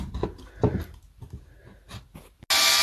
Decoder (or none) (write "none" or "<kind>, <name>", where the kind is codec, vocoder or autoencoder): none